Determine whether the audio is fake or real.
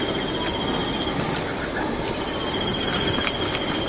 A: fake